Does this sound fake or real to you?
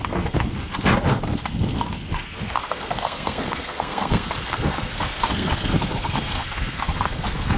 fake